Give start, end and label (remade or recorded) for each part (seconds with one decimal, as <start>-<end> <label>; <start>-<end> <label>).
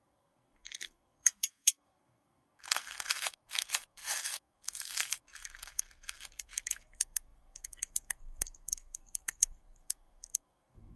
0.0-11.0 remade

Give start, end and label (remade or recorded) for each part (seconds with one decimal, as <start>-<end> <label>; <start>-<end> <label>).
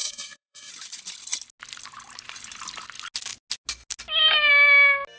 0.0-0.7 remade; 0.7-5.2 recorded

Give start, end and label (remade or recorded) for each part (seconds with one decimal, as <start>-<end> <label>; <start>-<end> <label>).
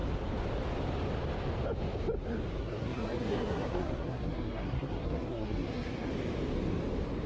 0.0-2.6 recorded; 2.6-6.1 remade; 6.1-7.3 recorded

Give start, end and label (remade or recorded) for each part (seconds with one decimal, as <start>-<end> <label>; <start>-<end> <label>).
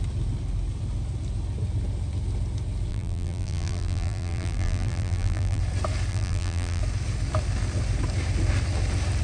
0.0-2.9 recorded; 2.9-5.6 remade; 5.6-6.1 recorded; 6.1-6.8 remade; 6.8-9.2 recorded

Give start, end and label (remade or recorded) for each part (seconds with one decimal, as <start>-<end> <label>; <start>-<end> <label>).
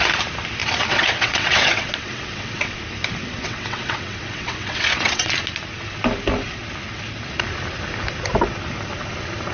0.0-0.6 recorded; 0.6-2.8 remade; 2.8-3.2 recorded; 3.2-5.3 remade; 5.3-9.5 recorded